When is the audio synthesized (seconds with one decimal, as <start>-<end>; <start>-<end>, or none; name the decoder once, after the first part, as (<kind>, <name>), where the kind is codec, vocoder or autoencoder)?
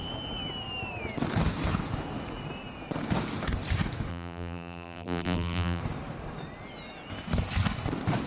4.1-5.8 (vocoder, BigVGAN v2)